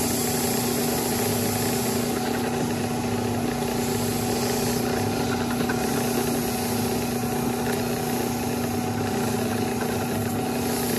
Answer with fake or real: real